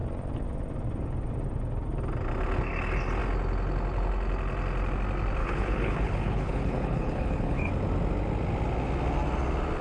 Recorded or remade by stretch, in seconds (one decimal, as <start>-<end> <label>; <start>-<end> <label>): 0.0-5.4 recorded; 5.4-7.7 remade; 7.7-9.8 recorded